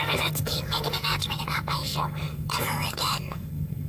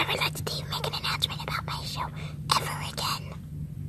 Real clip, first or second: second